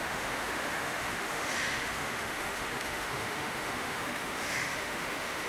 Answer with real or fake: fake